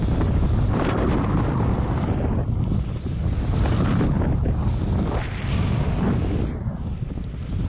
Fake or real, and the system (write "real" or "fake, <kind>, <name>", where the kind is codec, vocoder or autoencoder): real